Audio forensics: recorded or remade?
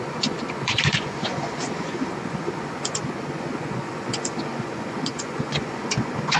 remade